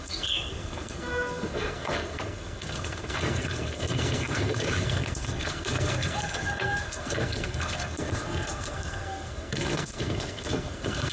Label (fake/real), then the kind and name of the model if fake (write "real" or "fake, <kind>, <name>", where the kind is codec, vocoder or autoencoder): fake, codec, SNAC